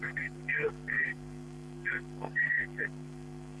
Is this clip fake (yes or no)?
yes